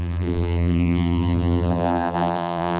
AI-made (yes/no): yes